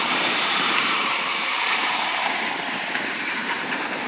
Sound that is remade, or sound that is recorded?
remade